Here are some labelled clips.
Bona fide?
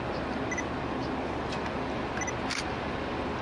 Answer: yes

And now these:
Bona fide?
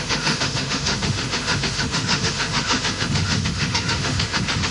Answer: no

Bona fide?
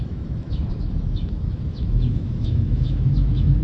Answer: no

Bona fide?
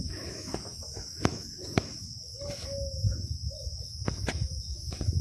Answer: no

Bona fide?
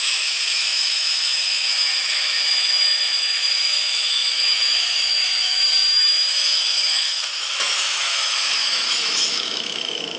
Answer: no